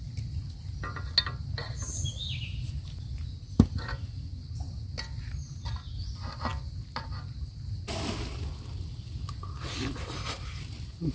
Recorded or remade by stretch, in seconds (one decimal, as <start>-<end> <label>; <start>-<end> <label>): 0.0-11.1 recorded